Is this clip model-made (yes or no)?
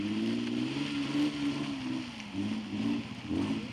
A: no